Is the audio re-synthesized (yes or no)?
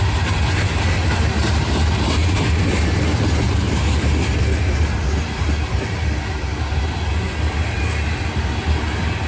no